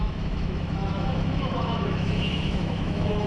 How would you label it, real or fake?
fake